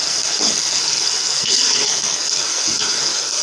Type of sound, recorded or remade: remade